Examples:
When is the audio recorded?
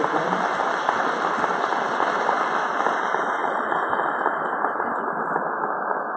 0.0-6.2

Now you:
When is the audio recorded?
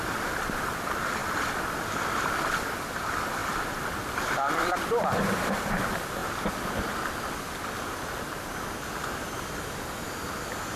0.0-1.2; 2.7-3.4; 5.7-10.8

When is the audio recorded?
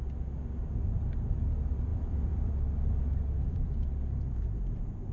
0.0-1.9; 2.5-3.4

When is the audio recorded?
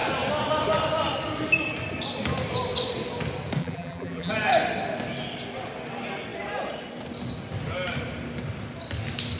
0.0-3.6; 4.3-9.4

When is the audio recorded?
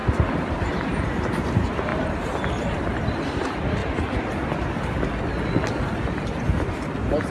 0.0-0.5; 1.9-2.5; 3.8-7.3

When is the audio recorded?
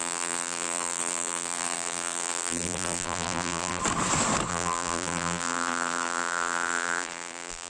3.8-4.5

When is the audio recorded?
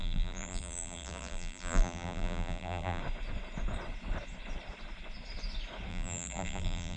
3.0-5.9